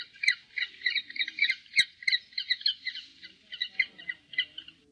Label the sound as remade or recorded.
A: recorded